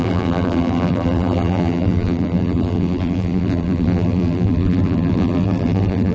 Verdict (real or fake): fake